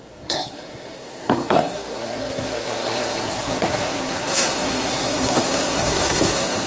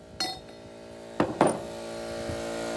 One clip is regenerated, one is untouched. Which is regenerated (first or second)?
first